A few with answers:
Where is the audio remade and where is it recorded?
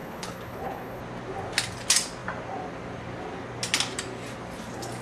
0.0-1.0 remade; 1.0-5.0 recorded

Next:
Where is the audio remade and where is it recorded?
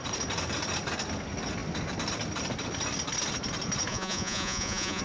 0.0-3.9 recorded; 3.9-5.0 remade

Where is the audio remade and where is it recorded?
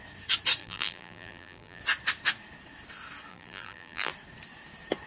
0.0-0.6 recorded; 0.6-1.8 remade; 1.8-3.3 recorded; 3.3-4.1 remade; 4.1-5.1 recorded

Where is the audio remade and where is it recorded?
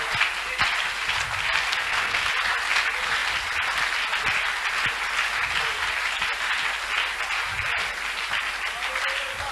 0.0-1.8 recorded; 1.8-2.3 remade; 2.3-9.5 recorded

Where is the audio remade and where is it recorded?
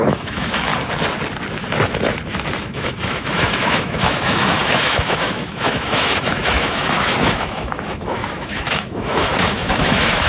0.0-0.7 remade; 0.7-2.6 recorded; 2.6-10.3 remade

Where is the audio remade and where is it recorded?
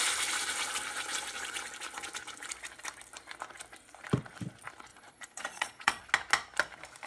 0.0-4.9 recorded; 4.9-6.1 remade; 6.1-7.1 recorded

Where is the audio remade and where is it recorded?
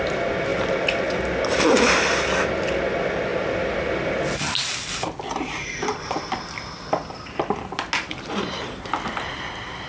0.0-9.9 recorded